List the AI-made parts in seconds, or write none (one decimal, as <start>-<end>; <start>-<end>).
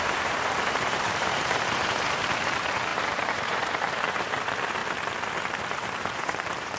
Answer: 0.0-4.8; 5.3-6.8